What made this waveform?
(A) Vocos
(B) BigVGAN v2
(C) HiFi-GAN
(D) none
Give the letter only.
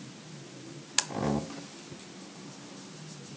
D